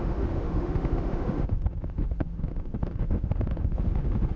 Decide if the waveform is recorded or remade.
remade